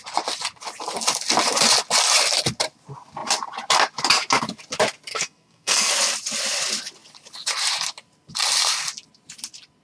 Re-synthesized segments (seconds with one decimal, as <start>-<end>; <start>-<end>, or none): 5.1-5.9